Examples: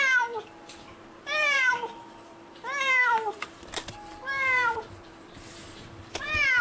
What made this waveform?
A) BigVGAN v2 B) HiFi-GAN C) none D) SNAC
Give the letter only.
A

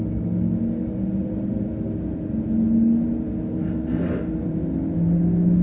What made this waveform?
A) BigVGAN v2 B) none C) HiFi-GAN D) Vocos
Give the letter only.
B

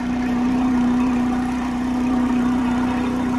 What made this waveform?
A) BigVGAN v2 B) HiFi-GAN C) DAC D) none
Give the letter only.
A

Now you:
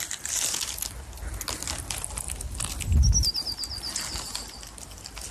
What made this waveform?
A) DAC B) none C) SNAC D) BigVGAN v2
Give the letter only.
B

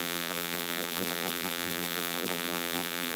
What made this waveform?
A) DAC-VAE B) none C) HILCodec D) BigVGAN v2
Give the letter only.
D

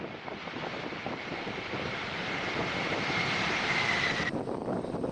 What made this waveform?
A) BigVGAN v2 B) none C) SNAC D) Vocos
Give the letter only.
A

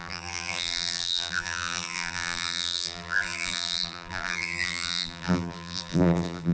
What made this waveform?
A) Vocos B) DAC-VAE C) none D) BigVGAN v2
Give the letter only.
D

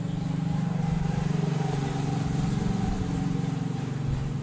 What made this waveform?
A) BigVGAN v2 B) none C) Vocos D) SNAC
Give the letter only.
A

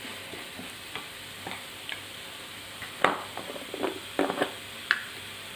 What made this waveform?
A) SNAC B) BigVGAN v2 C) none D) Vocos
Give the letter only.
B